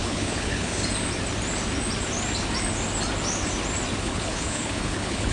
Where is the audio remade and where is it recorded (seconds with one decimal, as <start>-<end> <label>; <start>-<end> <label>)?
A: 0.0-0.8 remade; 0.8-4.0 recorded; 4.0-5.3 remade